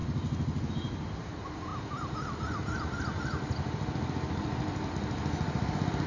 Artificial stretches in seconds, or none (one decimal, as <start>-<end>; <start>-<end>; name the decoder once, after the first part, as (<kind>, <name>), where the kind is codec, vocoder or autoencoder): none